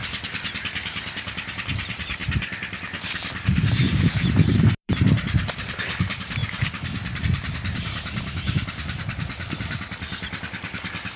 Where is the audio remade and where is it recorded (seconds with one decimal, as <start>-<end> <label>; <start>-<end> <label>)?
0.0-6.4 remade; 6.4-7.2 recorded; 7.2-11.2 remade